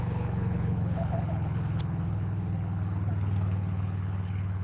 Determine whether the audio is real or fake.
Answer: fake